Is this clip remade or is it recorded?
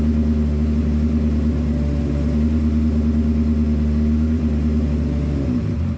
recorded